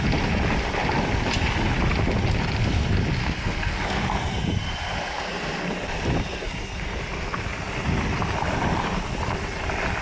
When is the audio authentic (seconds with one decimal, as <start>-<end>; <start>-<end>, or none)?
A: 0.0-3.2; 3.8-10.0